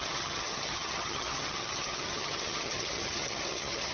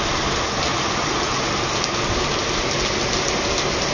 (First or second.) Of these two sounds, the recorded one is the second